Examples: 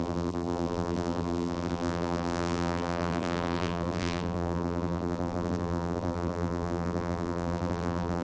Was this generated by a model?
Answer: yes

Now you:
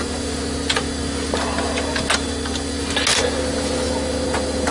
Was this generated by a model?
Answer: no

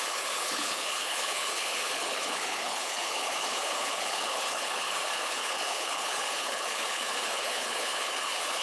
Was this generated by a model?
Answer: yes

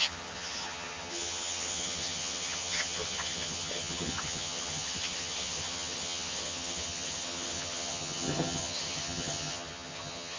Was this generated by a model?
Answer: yes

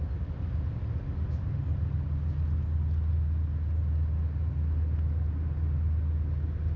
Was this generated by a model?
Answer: no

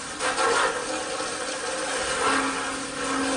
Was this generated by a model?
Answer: no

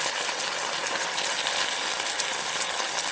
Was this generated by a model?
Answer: no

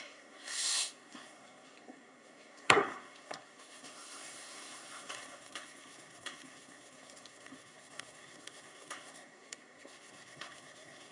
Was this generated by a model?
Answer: yes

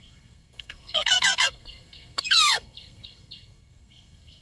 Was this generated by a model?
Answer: yes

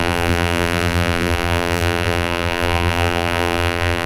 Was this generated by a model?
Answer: yes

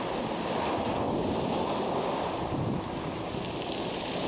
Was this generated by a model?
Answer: yes